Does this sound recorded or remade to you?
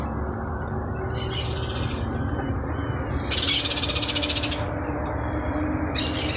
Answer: recorded